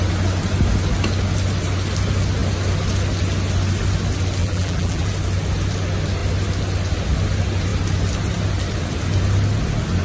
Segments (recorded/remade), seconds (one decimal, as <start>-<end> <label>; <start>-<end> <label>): 0.0-4.4 recorded; 4.4-5.1 remade; 5.1-10.0 recorded